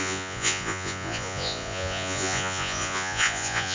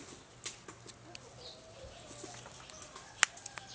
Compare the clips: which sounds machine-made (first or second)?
first